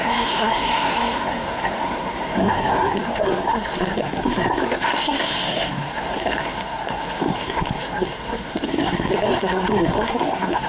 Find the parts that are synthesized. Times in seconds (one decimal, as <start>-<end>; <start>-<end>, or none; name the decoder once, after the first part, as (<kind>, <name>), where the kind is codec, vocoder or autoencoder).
0.0-10.7 (codec, SNAC)